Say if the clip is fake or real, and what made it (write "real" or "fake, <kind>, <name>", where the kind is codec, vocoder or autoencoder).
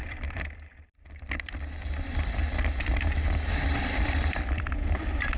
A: fake, vocoder, BigVGAN v2